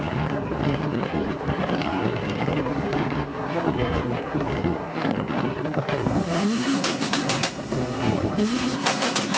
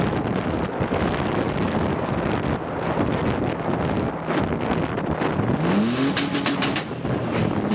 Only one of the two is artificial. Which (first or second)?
first